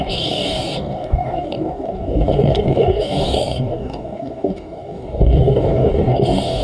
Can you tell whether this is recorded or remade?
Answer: remade